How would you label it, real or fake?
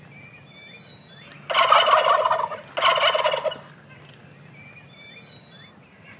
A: real